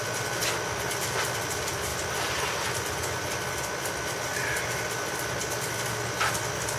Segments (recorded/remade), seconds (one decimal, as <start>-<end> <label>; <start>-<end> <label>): 0.0-6.8 recorded